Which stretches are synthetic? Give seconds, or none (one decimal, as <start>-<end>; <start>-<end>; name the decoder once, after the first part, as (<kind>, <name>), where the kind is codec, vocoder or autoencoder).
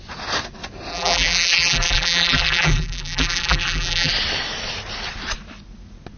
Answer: 0.9-4.1 (vocoder, BigVGAN v2)